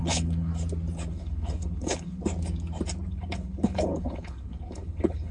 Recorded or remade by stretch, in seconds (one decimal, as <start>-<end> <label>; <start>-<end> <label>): 0.0-0.5 remade; 0.5-1.1 recorded; 1.1-2.2 remade; 2.2-3.1 recorded; 3.1-5.3 remade